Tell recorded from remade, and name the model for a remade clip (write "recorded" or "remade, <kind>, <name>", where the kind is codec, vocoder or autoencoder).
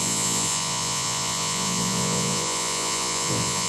remade, vocoder, Vocos